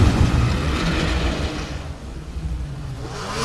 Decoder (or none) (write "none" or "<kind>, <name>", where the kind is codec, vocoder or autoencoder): vocoder, Vocos